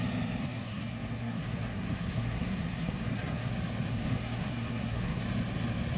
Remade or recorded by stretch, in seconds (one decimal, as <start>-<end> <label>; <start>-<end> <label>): 0.0-0.4 recorded; 0.4-3.5 remade; 3.5-3.9 recorded; 3.9-5.2 remade; 5.2-6.0 recorded